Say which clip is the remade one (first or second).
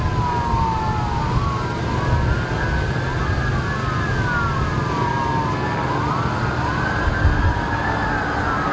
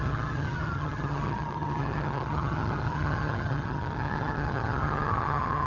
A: second